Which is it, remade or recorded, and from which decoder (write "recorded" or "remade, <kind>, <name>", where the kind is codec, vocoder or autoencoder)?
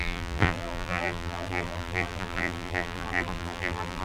remade, vocoder, BigVGAN v2